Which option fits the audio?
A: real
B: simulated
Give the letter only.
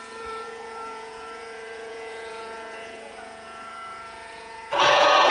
B